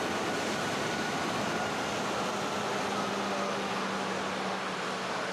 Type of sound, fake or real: real